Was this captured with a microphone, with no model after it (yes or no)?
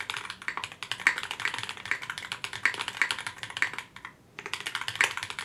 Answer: yes